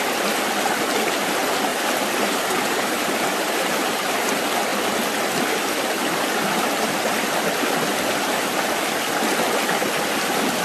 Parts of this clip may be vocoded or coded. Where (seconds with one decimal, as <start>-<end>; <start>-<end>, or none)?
1.7-4.3